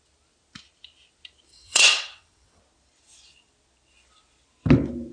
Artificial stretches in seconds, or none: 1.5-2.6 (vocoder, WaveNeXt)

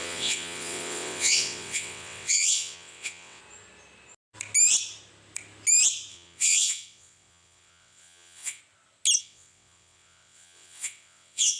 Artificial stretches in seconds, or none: 0.0-3.4 (vocoder, WaveNeXt); 6.1-8.6; 9.2-11.6

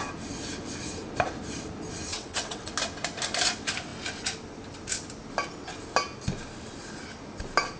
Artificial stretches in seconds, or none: 2.1-2.7 (vocoder, WaveNeXt)

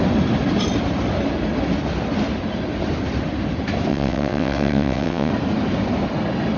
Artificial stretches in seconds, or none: 3.9-5.3 (vocoder, WaveNeXt)

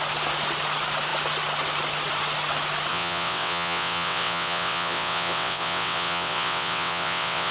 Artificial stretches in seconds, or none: 2.9-7.5 (vocoder, WaveNeXt)